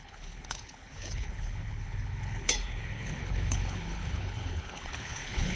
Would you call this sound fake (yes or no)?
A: yes